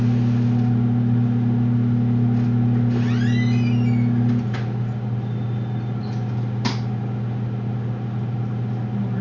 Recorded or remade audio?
recorded